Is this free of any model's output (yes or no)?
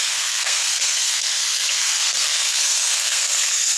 no